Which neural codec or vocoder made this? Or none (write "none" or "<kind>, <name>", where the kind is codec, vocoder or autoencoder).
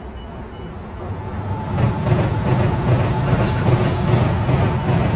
none